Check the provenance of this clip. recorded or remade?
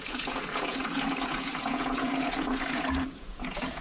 remade